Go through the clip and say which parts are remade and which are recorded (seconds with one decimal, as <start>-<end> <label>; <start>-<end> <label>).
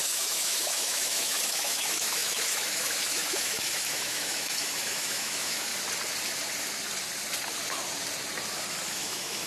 0.0-5.7 remade; 5.7-8.9 recorded; 8.9-9.5 remade